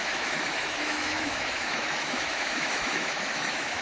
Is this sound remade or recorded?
remade